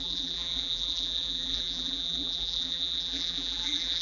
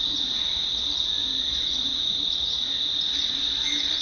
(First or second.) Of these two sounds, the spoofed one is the first